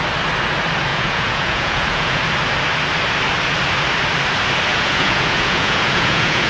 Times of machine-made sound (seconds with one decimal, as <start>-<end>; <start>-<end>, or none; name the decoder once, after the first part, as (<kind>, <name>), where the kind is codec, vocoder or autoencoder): 0.9-2.2 (vocoder, Vocos); 4.7-6.5